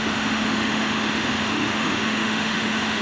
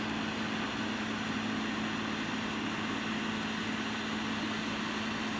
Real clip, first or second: second